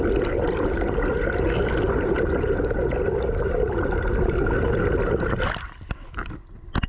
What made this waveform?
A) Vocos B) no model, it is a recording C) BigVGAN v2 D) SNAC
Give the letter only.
B